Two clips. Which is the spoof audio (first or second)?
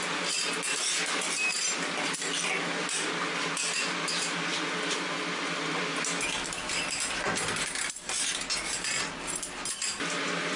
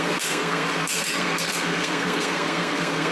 second